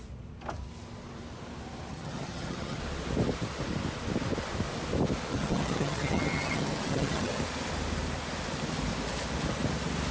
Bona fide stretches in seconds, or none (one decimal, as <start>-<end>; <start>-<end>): 0.0-1.9; 2.8-5.3; 7.4-10.1